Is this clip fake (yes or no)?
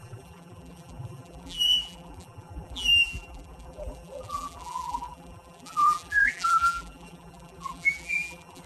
yes